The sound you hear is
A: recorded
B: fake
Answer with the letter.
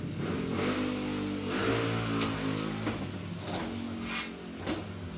A